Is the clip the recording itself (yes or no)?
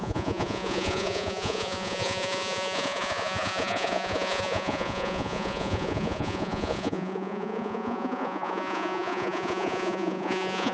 no